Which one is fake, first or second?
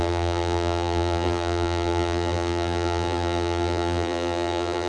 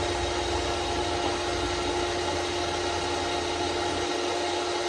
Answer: first